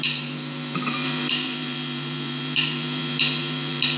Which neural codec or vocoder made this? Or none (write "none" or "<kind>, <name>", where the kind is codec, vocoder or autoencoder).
vocoder, BigVGAN v2